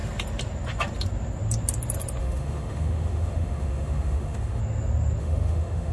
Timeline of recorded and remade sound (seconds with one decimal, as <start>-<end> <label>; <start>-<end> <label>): 0.0-2.2 recorded; 2.2-4.6 remade; 4.6-5.2 recorded; 5.2-5.9 remade